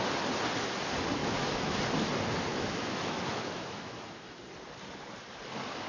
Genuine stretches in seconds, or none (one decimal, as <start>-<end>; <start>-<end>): 0.0-1.2; 1.8-2.5; 4.4-5.9